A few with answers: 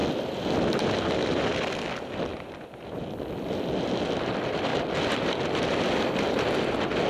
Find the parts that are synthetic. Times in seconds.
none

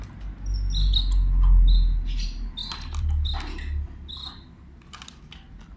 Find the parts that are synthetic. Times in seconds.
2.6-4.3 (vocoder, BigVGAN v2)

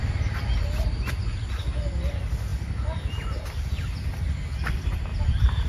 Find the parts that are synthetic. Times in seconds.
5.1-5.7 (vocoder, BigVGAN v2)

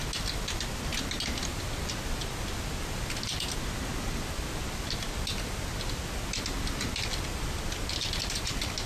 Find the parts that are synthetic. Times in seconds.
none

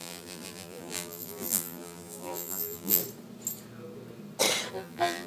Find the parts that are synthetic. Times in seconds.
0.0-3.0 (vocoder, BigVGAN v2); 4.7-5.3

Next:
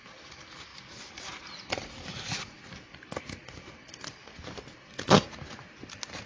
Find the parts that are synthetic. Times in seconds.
0.7-2.6 (vocoder, BigVGAN v2)

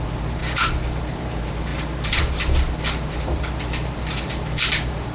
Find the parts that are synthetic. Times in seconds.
0.0-0.4 (vocoder, BigVGAN v2); 1.0-5.1

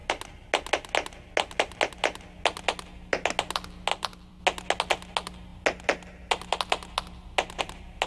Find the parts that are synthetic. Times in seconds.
3.9-4.4 (vocoder, BigVGAN v2)